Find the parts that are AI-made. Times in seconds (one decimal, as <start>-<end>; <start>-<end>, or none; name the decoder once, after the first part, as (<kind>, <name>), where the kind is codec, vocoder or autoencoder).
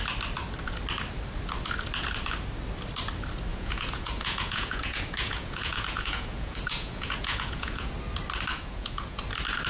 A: 3.5-7.9 (vocoder, Vocos); 8.5-9.2